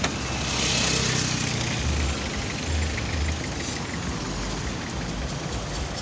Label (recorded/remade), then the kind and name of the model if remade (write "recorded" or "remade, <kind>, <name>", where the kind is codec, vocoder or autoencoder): recorded